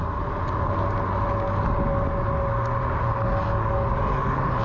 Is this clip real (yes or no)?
yes